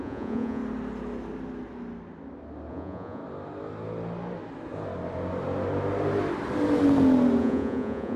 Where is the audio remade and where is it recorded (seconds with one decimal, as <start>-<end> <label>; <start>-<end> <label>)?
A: 0.0-0.6 remade; 0.6-2.7 recorded; 2.7-3.2 remade; 3.2-7.4 recorded; 7.4-8.2 remade